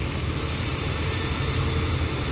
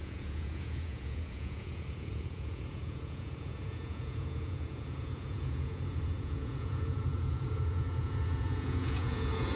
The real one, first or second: first